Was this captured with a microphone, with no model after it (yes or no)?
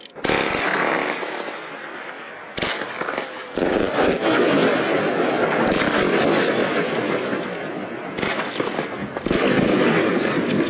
yes